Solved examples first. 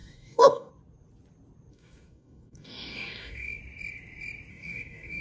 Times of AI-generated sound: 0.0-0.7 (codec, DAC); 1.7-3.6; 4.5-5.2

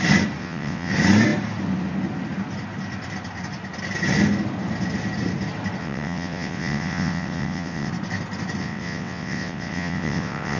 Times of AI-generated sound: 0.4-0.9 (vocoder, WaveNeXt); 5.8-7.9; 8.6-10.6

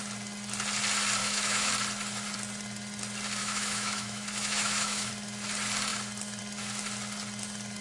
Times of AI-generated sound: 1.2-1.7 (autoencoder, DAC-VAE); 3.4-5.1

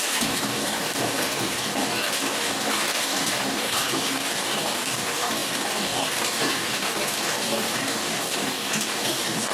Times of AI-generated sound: 0.0-9.5 (codec, DAC)

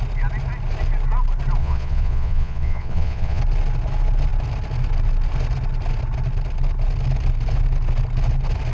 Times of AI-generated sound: 1.6-3.4 (vocoder, Vocos)